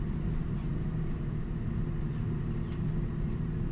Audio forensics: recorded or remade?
recorded